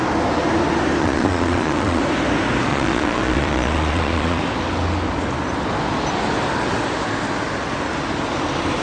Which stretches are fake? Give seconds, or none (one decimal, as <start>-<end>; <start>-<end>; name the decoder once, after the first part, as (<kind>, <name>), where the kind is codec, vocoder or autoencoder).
1.0-2.0 (vocoder, Vocos); 2.7-4.4